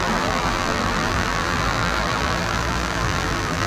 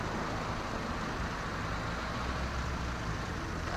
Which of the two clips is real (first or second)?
second